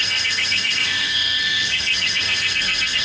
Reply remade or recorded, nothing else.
remade